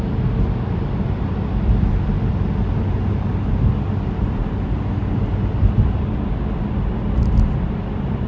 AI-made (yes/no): no